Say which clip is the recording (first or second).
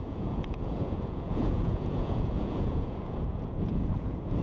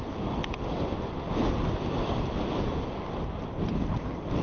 second